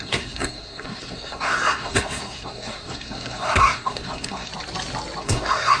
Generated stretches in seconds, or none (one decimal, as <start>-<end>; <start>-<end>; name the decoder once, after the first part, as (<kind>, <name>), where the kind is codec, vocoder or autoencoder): 0.0-4.5 (codec, SNAC); 5.2-5.8